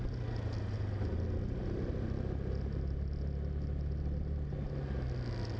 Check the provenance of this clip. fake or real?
real